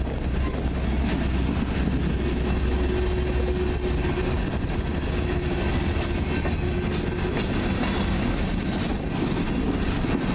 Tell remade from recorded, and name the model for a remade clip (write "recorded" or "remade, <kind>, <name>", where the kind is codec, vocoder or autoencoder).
recorded